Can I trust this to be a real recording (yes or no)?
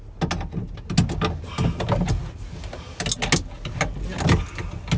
yes